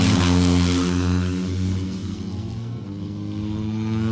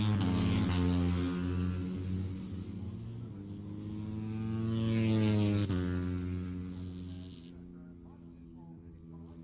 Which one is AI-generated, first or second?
first